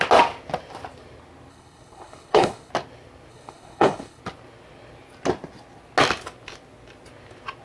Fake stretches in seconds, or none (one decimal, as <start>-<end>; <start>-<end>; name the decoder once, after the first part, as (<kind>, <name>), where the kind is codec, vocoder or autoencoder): 1.5-2.7 (codec, HILCodec); 3.3-4.2